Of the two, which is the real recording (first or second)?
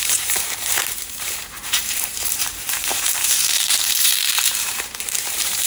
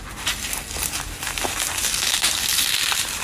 second